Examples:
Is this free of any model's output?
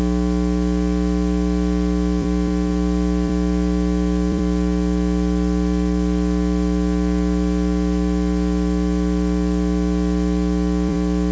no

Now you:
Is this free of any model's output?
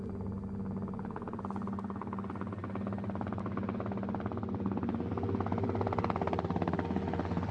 yes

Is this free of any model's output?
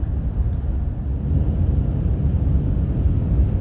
yes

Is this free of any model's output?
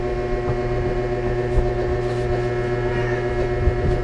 yes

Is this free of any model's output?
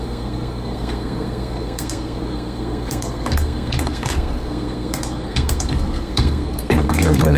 no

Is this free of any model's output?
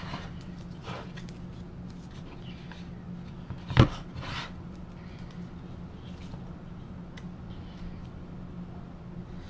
yes